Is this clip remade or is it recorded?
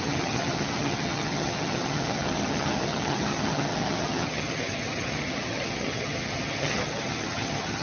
remade